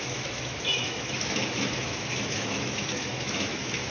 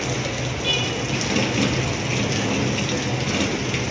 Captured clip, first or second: second